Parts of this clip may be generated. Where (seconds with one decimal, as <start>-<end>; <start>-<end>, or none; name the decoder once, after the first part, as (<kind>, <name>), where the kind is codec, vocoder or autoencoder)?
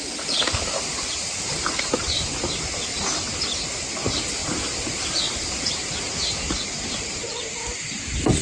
none